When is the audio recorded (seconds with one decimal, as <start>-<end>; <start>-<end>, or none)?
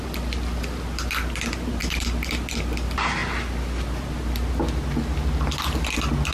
0.0-6.3